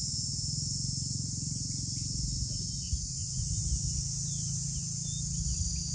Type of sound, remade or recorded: recorded